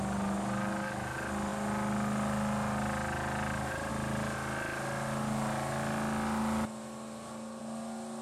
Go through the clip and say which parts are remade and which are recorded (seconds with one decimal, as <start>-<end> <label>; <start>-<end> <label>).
0.0-8.2 recorded